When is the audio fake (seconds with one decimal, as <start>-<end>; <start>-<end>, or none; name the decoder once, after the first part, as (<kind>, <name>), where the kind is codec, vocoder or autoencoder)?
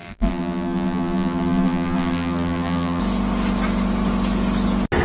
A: 0.0-3.0 (vocoder, BigVGAN v2)